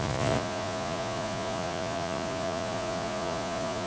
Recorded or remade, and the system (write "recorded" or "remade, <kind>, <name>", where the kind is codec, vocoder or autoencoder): remade, vocoder, Vocos